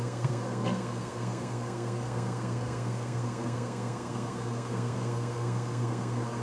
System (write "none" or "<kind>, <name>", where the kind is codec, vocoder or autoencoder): codec, SNAC